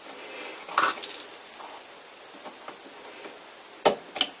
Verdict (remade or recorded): recorded